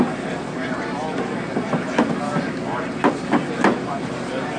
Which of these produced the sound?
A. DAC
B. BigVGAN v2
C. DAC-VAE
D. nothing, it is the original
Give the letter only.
D